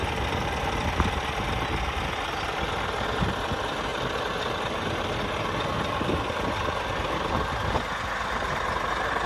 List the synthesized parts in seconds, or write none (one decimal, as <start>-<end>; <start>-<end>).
none